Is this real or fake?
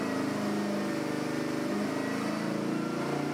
real